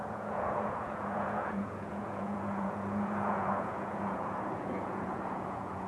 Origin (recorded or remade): remade